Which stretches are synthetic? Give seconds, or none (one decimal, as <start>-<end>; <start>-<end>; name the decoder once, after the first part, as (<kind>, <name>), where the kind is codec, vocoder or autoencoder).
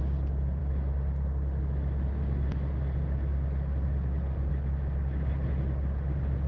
none